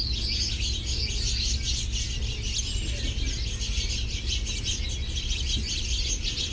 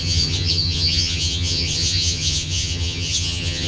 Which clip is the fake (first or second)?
second